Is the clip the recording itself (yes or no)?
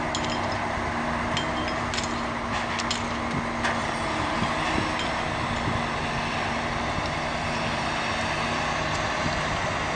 yes